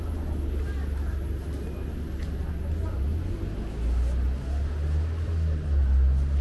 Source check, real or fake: real